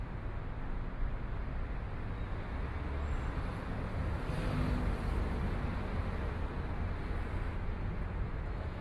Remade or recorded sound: recorded